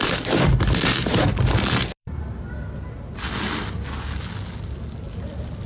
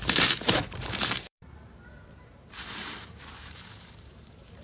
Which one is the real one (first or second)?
first